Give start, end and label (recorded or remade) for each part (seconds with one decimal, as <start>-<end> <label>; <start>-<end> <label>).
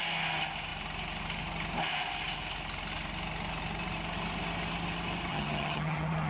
0.0-5.3 recorded; 5.3-6.3 remade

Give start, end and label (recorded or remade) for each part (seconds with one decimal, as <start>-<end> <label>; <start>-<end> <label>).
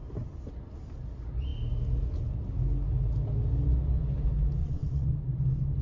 0.0-4.6 recorded; 4.6-5.1 remade; 5.1-5.8 recorded